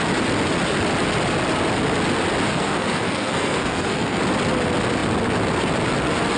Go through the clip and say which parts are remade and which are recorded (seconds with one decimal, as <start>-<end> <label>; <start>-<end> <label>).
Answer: 0.0-2.5 recorded; 2.5-4.2 remade; 4.2-6.4 recorded